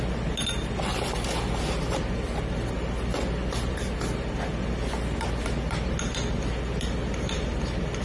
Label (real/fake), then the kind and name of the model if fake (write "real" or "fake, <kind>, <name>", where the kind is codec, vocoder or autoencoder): real